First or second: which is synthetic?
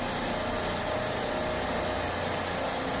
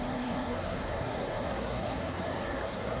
second